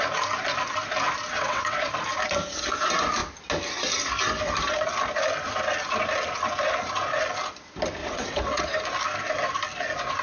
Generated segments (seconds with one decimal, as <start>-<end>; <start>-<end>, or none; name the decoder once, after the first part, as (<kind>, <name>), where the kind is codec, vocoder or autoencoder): 1.3-1.9 (vocoder, WaveNeXt); 8.0-8.6